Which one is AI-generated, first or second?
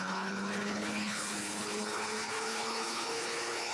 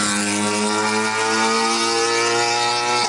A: first